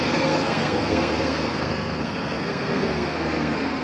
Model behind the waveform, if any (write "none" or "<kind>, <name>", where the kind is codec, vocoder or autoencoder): codec, SNAC